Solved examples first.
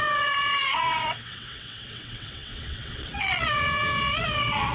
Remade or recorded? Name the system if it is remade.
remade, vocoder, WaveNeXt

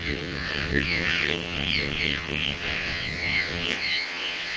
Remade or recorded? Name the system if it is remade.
remade, vocoder, WaveNeXt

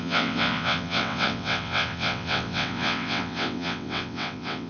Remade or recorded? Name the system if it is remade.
remade, vocoder, WaveNeXt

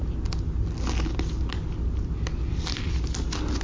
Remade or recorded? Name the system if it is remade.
recorded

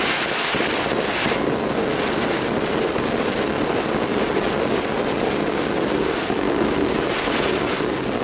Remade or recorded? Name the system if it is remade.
recorded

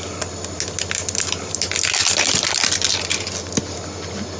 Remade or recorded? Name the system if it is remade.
recorded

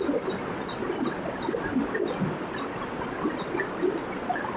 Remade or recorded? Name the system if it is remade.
recorded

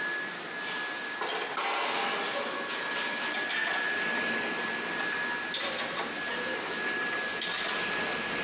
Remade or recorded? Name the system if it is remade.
recorded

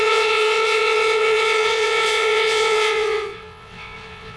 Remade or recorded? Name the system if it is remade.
remade, vocoder, WaveNeXt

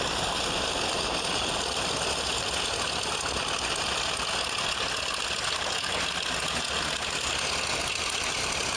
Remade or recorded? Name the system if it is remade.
recorded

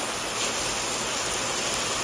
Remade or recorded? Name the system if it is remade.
recorded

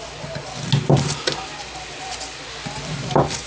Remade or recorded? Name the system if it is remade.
recorded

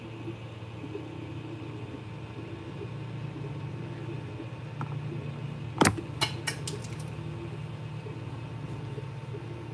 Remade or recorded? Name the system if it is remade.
recorded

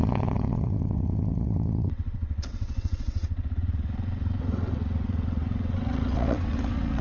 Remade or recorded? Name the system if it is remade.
remade, vocoder, WaveNeXt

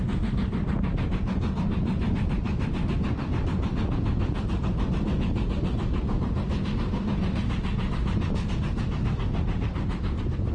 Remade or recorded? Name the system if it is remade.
recorded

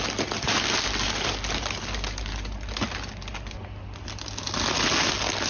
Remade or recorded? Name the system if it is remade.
recorded